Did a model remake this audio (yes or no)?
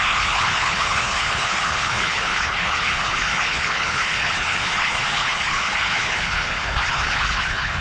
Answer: yes